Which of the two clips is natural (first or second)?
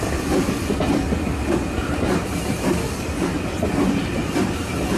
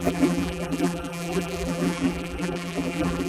first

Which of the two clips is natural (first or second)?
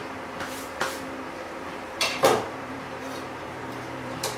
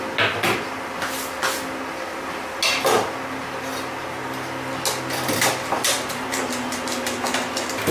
second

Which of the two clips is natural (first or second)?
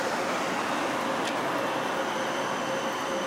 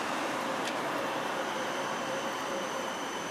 first